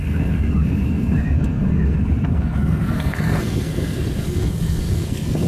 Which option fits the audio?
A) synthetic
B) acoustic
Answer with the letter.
A